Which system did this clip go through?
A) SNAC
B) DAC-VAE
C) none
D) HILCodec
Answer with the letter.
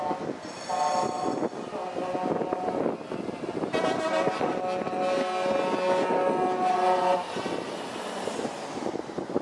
C